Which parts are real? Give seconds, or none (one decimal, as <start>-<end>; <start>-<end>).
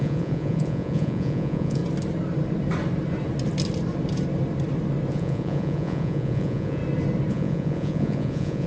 1.8-5.1; 6.8-7.3